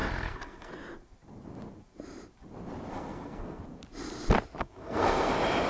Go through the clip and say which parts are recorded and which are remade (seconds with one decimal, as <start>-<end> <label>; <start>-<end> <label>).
0.0-0.7 remade; 0.7-2.9 recorded; 2.9-3.6 remade; 3.6-4.6 recorded; 4.6-5.3 remade; 5.3-5.7 recorded